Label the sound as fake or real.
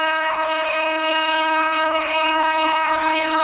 fake